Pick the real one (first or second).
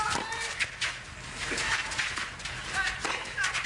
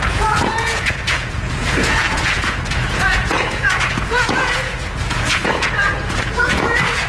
first